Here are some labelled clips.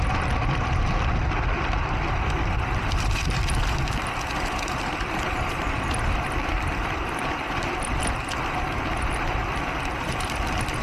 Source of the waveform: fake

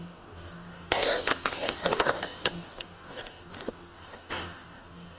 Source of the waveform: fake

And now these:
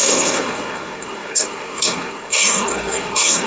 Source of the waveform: fake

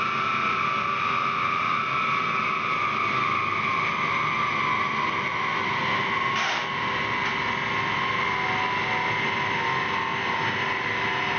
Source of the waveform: real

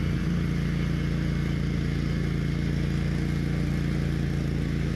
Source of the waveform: real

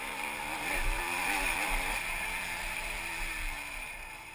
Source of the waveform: fake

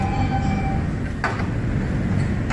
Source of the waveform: real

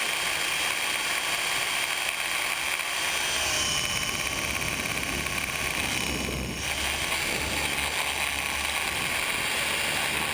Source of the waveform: real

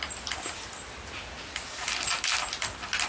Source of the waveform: real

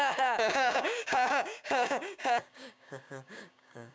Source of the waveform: fake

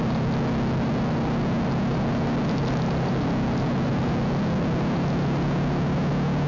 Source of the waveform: real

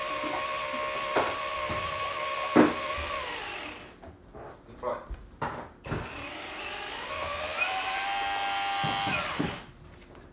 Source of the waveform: real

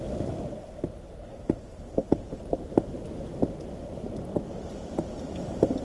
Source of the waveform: real